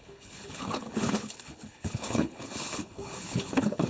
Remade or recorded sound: remade